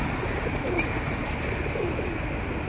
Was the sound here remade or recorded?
recorded